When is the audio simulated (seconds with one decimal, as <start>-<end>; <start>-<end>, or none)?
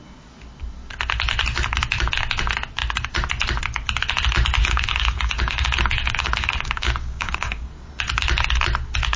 4.6-7.7